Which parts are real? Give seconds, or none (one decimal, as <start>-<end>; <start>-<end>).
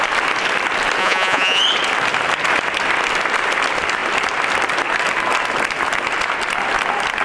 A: 0.0-1.0; 1.6-7.2